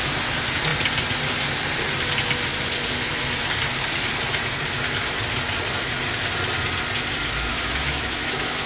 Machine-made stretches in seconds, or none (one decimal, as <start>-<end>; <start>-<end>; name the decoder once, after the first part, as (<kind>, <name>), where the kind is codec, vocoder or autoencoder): 7.5-8.7 (autoencoder, DAC-VAE)